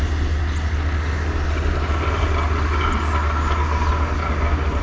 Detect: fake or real real